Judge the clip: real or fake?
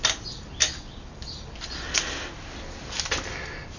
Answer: real